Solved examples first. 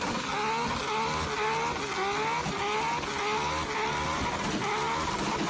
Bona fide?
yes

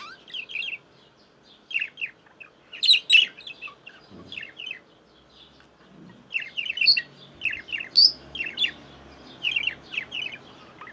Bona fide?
yes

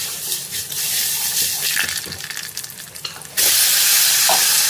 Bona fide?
no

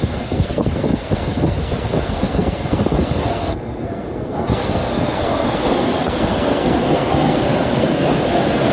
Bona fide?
no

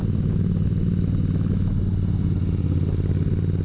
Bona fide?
yes